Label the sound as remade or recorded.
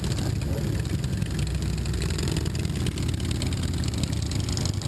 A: recorded